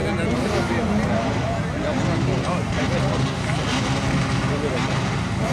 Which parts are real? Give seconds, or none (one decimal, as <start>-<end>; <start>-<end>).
0.0-5.5